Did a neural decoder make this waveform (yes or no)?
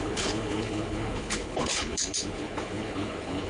yes